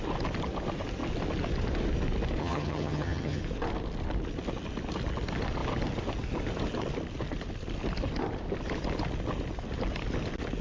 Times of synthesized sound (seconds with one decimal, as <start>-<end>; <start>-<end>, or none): 2.4-3.4